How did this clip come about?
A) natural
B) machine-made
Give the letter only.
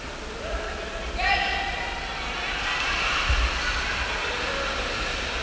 A